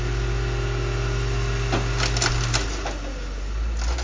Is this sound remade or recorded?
recorded